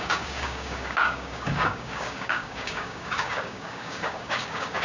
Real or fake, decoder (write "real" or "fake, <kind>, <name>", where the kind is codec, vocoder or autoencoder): fake, codec, DAC